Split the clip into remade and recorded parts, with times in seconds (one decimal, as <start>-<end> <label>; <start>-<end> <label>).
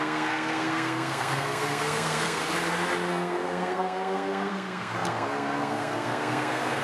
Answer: 0.0-2.4 remade; 2.4-3.1 recorded; 3.1-6.8 remade